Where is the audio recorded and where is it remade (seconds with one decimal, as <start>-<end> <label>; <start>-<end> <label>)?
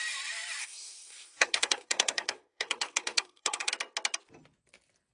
0.0-0.6 recorded; 0.6-3.7 remade; 3.7-5.1 recorded